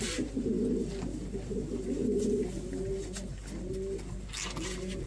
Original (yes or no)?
yes